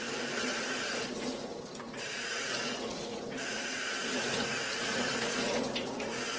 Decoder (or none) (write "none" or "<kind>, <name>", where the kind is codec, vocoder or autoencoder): vocoder, Vocos